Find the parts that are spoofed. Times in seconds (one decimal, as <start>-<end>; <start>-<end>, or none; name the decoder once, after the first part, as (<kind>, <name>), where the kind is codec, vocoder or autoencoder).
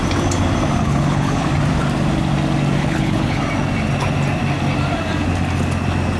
0.8-1.5 (codec, HILCodec); 2.8-3.4